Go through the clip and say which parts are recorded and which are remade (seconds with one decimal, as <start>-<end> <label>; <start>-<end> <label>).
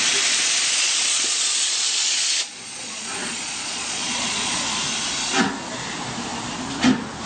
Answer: 0.0-0.8 recorded; 0.8-4.6 remade; 4.6-7.3 recorded